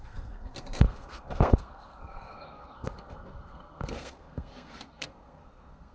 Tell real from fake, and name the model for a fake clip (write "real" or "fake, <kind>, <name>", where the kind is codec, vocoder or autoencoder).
fake, codec, SNAC